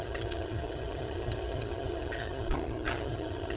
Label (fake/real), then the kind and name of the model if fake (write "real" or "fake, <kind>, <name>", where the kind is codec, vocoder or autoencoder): fake, vocoder, HiFi-GAN